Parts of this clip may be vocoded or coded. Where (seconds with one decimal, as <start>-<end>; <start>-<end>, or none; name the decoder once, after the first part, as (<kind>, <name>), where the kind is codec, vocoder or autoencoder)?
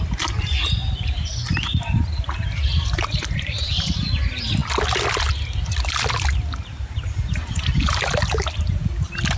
0.8-3.7 (vocoder, BigVGAN v2)